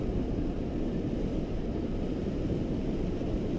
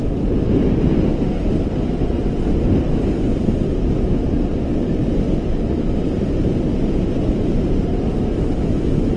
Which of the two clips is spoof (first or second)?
first